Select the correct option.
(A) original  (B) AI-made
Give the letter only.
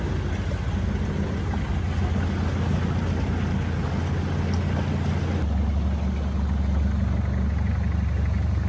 A